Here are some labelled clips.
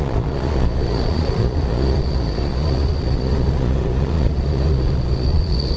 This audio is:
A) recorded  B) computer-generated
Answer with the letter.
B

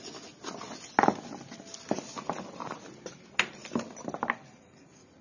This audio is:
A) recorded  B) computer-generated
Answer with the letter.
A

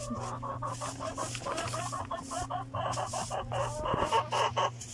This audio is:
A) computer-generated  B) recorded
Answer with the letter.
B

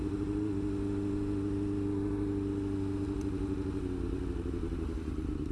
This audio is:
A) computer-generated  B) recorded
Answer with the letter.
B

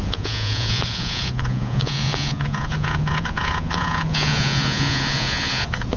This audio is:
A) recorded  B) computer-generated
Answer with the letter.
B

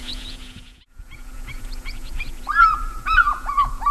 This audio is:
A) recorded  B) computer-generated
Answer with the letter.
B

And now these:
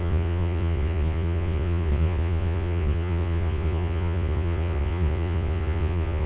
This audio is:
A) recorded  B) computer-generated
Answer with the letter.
B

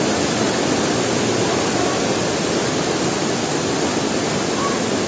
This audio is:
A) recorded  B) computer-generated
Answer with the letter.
A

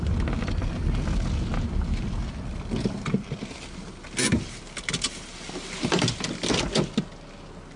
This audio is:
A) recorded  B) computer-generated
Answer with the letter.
A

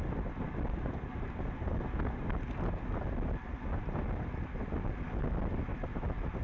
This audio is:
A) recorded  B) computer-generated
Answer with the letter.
A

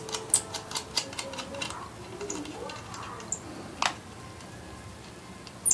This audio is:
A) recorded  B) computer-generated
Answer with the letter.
A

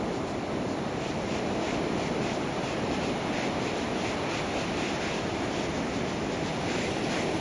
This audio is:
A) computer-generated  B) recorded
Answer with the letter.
B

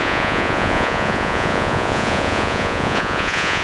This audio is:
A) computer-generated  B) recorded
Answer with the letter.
A